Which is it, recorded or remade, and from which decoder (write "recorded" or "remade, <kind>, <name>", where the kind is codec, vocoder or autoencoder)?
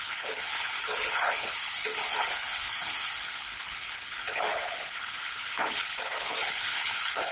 remade, codec, HILCodec